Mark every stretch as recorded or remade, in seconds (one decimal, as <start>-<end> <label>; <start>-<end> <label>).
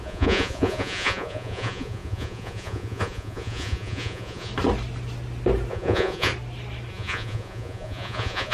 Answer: 0.0-4.5 remade; 4.5-5.7 recorded; 5.7-6.3 remade; 6.3-6.9 recorded; 6.9-8.5 remade